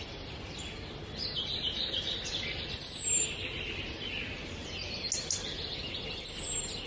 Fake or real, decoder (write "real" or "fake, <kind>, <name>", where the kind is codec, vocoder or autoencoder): real